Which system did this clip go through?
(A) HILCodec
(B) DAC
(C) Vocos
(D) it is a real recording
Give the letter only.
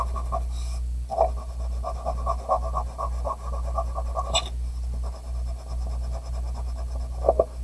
D